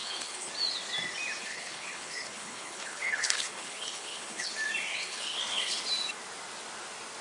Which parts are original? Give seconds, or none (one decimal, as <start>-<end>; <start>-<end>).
0.5-1.4; 4.5-4.9; 5.8-7.2